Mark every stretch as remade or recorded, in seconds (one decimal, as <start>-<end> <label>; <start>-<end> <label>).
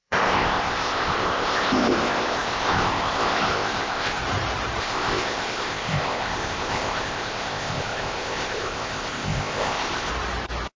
0.0-4.2 remade; 4.2-4.8 recorded; 4.8-10.1 remade; 10.1-10.8 recorded